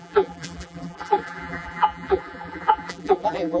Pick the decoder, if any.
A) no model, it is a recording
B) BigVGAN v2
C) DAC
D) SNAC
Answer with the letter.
B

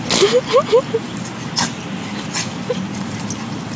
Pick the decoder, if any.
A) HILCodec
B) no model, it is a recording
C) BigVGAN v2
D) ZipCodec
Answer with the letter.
B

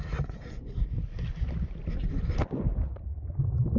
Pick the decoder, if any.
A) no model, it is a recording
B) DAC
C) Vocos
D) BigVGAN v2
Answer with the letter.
A